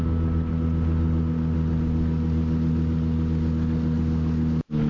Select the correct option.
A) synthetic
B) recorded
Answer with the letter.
B